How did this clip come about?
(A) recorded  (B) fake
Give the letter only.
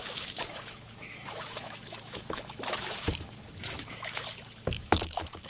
B